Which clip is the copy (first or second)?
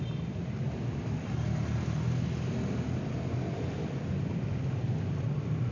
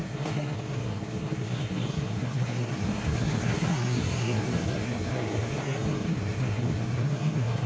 second